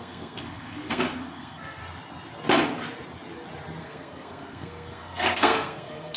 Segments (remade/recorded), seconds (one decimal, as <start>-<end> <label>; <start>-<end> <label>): 0.0-1.8 remade; 1.8-3.8 recorded; 3.8-6.2 remade